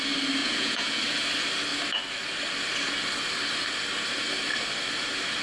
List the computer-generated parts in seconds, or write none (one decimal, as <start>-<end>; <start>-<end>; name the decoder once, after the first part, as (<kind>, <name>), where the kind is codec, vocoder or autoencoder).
0.4-1.0 (vocoder, Vocos)